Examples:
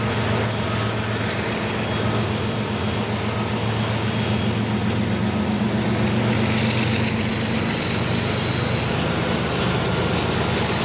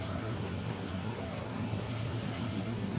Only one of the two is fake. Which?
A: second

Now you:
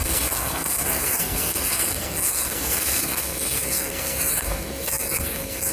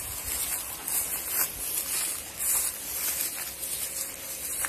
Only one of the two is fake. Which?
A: first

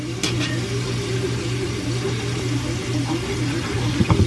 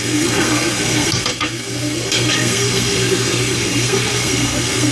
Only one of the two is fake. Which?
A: second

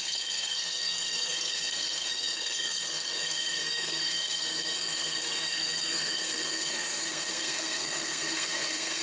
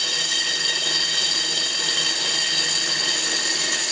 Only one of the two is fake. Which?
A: first